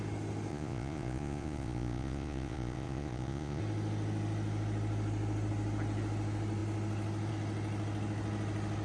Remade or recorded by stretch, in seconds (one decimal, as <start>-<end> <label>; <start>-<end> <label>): 0.0-0.5 recorded; 0.5-3.6 remade; 3.6-8.8 recorded